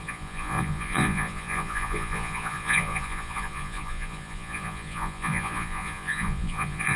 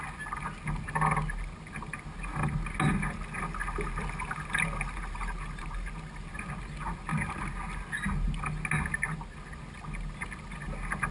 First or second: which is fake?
first